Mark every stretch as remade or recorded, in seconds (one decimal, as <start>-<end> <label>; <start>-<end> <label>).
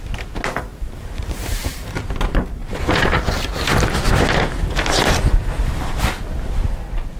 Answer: 0.0-0.7 recorded; 0.7-2.2 remade; 2.2-2.6 recorded; 2.6-3.4 remade; 3.4-7.2 recorded